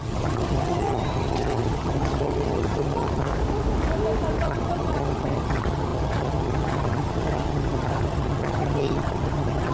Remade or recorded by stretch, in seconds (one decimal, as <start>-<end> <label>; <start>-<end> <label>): 0.0-3.3 remade; 3.3-4.4 recorded; 4.4-9.7 remade